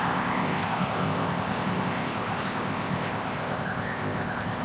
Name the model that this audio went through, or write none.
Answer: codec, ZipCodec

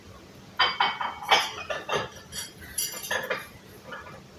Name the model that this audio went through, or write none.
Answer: none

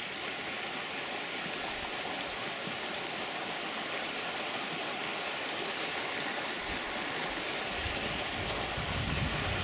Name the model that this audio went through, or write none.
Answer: none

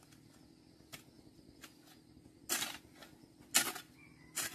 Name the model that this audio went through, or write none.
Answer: none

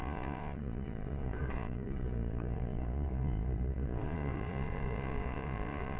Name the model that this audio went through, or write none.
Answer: vocoder, Vocos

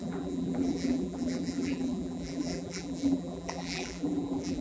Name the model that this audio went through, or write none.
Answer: vocoder, BigVGAN v2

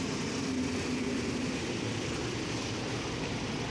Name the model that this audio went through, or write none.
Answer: vocoder, BigVGAN v2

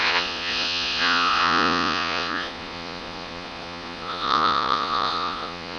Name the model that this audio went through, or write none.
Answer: vocoder, Vocos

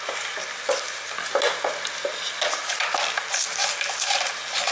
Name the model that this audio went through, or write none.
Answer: none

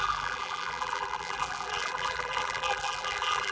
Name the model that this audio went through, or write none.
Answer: vocoder, BigVGAN v2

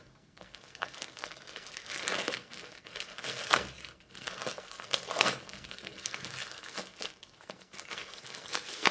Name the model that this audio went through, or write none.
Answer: codec, SNAC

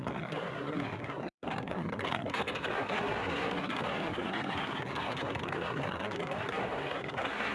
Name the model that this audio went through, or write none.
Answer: codec, SNAC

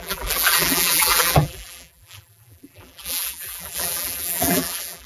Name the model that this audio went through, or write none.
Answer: vocoder, BigVGAN v2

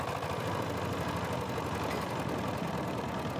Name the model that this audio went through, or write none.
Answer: none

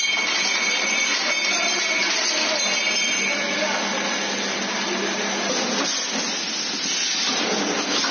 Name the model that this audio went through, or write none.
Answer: none